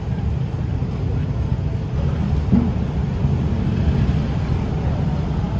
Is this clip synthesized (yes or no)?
no